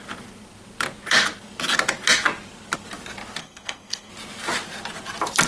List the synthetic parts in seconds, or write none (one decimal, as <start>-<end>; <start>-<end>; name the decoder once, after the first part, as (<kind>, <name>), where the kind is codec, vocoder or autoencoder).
3.4-4.1 (codec, SNAC)

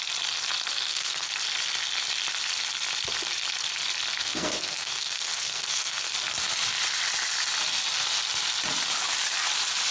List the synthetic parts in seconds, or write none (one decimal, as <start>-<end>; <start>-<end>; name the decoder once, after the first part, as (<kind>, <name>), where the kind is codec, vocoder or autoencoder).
0.7-1.3 (codec, SNAC); 4.2-6.1

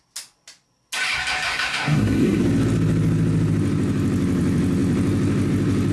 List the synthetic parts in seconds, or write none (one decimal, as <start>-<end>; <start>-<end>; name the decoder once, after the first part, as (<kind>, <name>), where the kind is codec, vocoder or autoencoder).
1.5-2.4 (codec, SNAC)